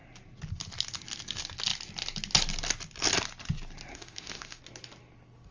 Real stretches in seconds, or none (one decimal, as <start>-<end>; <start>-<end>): 0.0-3.9; 4.6-5.5